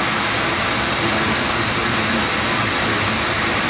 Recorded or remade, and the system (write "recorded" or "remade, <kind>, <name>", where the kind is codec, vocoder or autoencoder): recorded